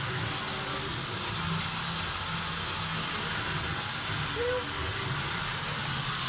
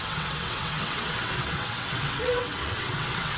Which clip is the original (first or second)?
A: first